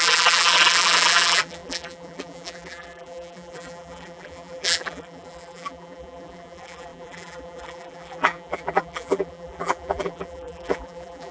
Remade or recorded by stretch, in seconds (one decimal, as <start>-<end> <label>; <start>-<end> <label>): 0.0-11.3 remade